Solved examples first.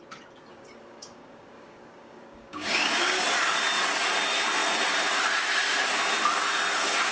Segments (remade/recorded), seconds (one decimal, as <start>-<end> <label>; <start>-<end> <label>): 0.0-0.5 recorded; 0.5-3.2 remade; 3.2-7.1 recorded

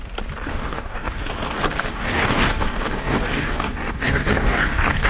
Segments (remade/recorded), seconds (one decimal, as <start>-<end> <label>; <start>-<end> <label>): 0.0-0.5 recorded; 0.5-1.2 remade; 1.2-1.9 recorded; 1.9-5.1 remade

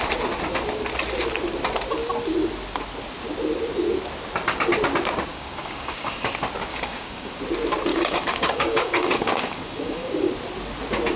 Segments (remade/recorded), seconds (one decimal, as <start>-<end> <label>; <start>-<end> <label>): 0.0-5.3 recorded; 5.3-6.2 remade; 6.2-6.7 recorded; 6.7-7.4 remade; 7.4-7.9 recorded; 7.9-10.3 remade; 10.3-11.2 recorded